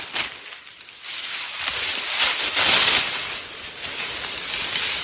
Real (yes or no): yes